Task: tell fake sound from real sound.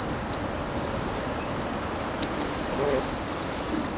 real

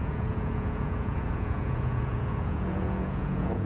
fake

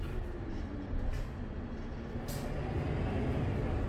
real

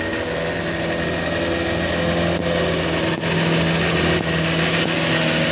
real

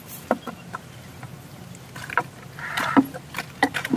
real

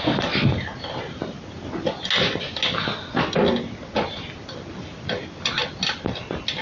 real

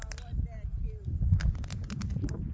real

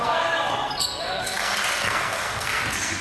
fake